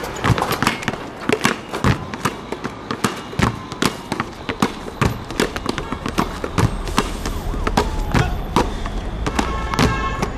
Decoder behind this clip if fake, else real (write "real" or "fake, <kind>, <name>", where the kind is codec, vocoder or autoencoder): real